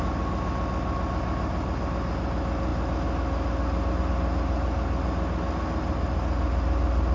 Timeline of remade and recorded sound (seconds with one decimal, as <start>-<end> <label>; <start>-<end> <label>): 0.0-7.1 recorded